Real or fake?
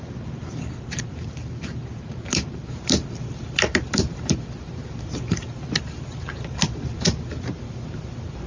fake